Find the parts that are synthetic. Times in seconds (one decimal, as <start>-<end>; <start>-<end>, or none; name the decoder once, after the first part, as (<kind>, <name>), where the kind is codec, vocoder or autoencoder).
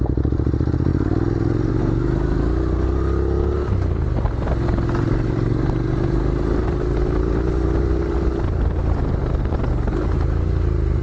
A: none